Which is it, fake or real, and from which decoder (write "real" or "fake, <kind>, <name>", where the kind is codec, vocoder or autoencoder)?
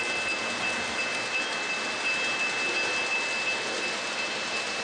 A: real